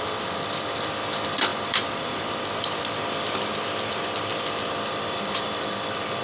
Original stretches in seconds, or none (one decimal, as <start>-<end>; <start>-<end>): 0.0-1.5; 2.2-6.2